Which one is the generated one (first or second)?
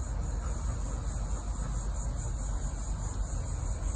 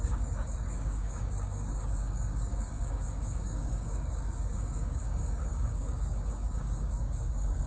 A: second